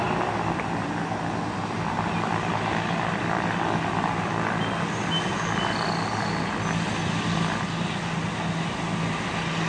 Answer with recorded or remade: recorded